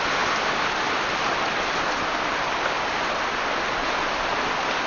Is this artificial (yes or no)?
no